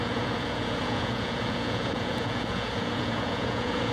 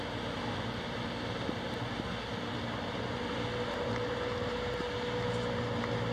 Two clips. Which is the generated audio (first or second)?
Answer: first